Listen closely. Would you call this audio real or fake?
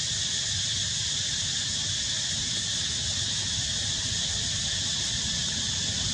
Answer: real